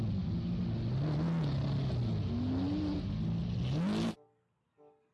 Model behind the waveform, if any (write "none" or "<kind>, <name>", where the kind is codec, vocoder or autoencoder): none